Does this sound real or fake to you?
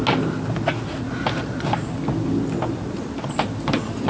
real